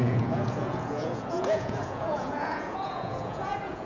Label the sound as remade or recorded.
remade